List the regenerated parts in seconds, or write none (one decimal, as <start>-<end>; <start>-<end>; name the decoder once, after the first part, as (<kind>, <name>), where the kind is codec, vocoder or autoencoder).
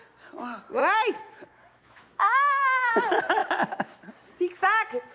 0.8-2.9 (autoencoder, DAC-VAE); 3.4-4.0